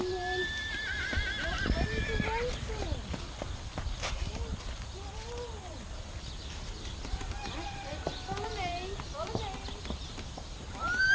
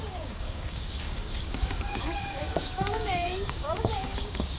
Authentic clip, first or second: first